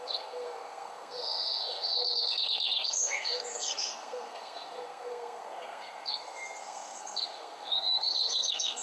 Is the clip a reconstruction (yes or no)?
yes